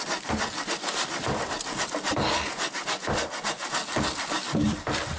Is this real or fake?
real